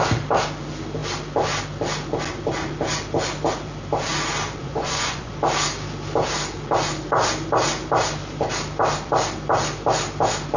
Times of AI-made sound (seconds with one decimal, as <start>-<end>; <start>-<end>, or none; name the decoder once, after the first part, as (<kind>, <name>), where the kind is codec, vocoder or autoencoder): 4.6-5.3 (vocoder, Vocos)